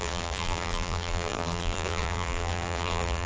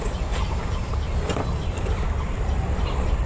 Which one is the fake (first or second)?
first